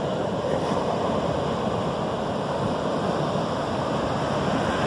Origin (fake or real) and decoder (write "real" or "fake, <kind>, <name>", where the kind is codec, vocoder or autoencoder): real